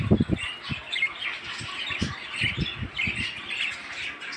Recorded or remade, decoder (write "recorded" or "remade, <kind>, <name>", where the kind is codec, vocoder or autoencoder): recorded